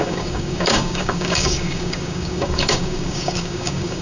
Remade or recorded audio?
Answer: remade